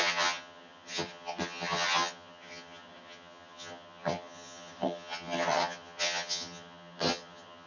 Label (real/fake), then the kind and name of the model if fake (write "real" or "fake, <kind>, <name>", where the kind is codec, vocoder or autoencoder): fake, vocoder, HiFi-GAN